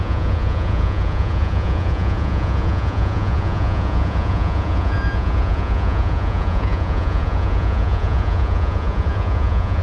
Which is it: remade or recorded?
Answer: remade